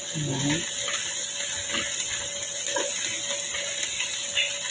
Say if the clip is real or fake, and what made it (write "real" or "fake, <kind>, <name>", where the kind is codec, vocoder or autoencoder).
real